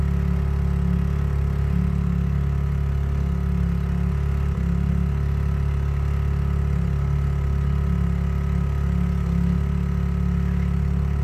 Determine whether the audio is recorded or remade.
recorded